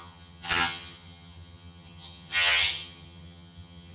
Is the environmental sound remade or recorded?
remade